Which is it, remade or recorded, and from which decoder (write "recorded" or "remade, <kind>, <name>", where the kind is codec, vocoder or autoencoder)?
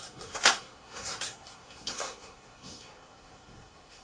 remade, codec, SNAC